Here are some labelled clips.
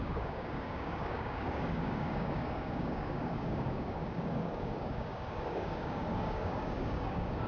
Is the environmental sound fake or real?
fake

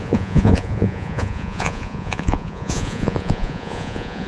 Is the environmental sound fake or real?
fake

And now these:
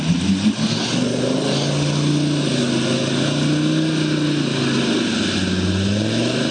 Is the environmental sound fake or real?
real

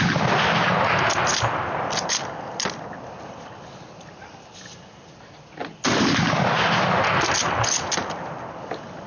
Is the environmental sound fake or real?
real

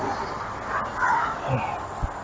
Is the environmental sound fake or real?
real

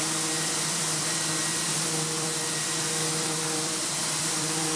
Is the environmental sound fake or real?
fake